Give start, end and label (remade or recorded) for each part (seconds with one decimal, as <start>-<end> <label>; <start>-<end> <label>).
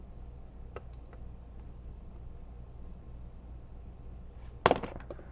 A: 0.0-5.3 recorded